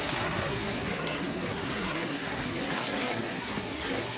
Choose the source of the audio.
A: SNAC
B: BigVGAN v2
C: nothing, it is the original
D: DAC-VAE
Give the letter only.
A